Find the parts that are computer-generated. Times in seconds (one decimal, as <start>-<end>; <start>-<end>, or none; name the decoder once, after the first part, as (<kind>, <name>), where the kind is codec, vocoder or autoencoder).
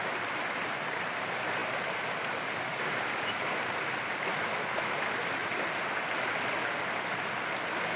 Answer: none